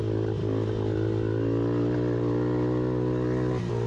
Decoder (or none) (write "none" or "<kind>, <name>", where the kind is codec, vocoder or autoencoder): none